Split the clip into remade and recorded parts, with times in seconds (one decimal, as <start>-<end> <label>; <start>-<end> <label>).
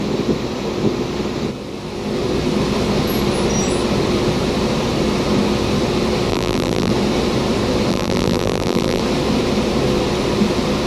0.0-6.3 recorded; 6.3-6.9 remade; 6.9-7.9 recorded; 7.9-9.0 remade; 9.0-10.9 recorded